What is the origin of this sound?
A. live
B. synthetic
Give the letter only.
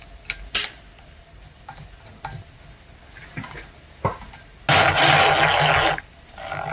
A